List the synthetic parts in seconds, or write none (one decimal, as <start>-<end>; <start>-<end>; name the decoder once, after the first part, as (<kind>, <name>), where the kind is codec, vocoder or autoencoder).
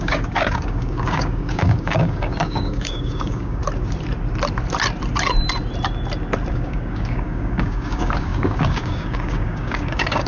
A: 0.0-3.6 (codec, DAC); 6.5-10.3